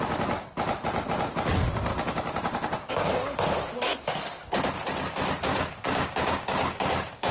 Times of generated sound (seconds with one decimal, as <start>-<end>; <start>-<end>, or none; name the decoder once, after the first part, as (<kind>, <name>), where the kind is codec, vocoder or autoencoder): 1.9-2.9 (codec, DAC); 5.5-7.3